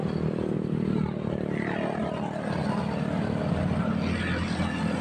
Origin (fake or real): real